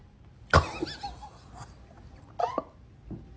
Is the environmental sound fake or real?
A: real